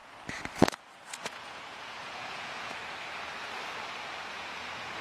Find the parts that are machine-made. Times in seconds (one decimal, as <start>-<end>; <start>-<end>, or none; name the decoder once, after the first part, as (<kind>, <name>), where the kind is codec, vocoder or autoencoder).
0.6-2.8 (vocoder, Vocos); 4.3-5.0